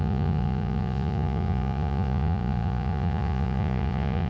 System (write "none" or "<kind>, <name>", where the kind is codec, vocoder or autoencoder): vocoder, Vocos